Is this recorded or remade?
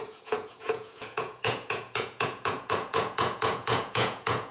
remade